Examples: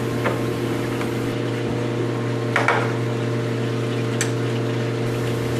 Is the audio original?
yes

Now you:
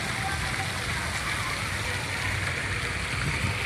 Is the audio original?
yes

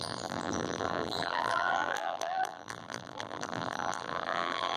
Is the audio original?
no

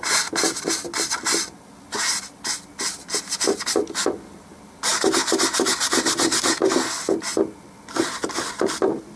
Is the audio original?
yes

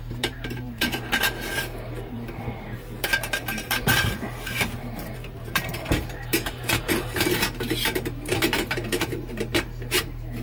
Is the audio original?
no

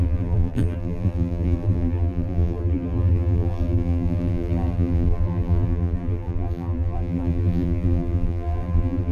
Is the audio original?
no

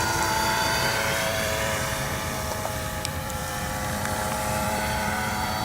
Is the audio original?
no